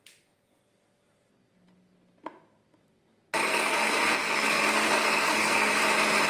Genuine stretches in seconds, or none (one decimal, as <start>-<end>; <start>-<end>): 0.0-3.4; 5.8-6.3